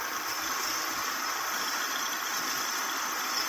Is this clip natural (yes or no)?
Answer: no